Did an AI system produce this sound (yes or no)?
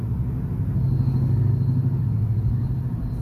no